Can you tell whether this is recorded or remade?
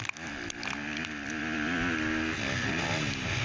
recorded